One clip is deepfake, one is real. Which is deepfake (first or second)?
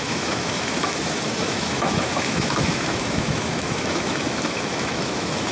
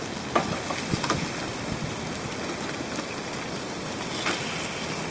first